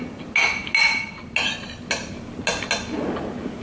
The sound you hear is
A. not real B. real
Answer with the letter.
B